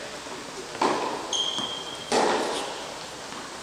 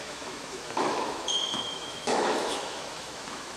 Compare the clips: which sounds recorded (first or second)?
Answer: first